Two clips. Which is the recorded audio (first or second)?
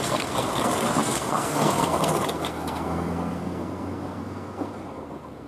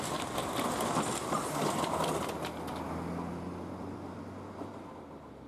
second